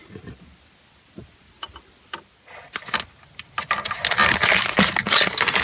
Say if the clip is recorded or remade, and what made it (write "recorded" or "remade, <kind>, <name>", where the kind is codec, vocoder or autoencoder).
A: recorded